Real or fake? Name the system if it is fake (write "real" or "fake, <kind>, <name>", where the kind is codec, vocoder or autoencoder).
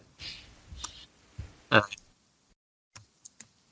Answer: real